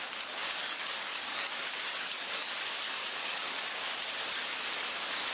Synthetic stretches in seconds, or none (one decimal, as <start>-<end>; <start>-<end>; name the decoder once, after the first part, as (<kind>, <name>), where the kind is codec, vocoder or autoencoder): 0.6-3.8 (codec, DAC)